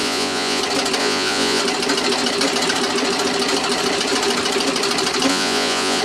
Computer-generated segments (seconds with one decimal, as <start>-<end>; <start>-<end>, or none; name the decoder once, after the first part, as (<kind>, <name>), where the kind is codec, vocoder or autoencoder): 0.0-0.6 (vocoder, Vocos); 1.0-1.6; 5.3-6.0